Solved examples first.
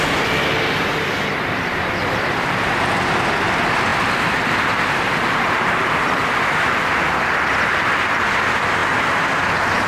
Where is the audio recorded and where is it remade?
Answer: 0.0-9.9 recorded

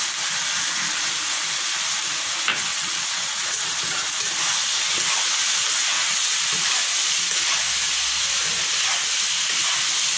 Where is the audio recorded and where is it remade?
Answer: 0.0-2.5 recorded; 2.5-4.0 remade; 4.0-5.9 recorded; 5.9-6.4 remade; 6.4-10.2 recorded